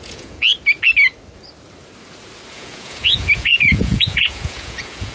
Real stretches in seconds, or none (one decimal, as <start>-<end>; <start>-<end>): 0.4-2.5